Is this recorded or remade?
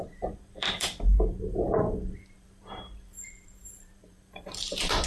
remade